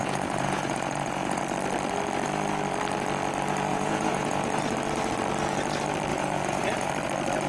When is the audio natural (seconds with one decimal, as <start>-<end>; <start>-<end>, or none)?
1.4-3.7; 4.6-6.1; 6.9-7.5